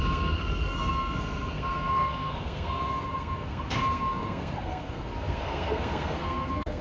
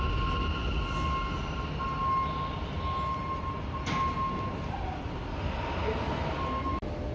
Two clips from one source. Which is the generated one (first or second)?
first